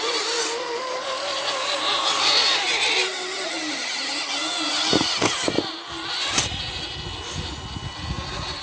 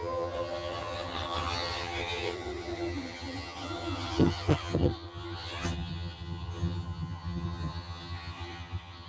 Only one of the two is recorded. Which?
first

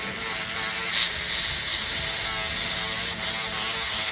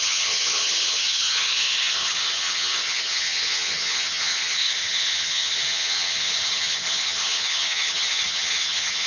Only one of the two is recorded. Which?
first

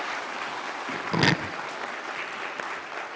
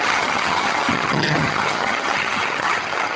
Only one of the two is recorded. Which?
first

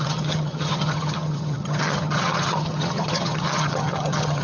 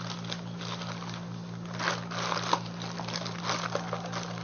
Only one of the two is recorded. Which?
second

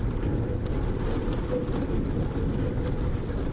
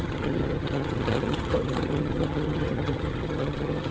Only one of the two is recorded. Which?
first